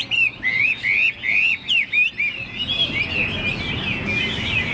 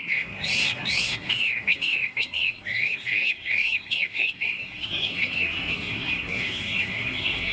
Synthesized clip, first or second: second